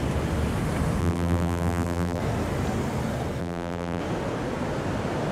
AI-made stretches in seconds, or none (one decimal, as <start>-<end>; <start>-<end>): 1.0-2.2; 3.4-4.0